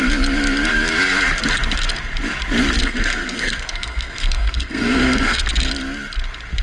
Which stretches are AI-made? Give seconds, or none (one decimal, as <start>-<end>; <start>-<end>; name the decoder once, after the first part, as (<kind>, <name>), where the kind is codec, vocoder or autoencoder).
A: 2.8-5.4 (codec, SNAC)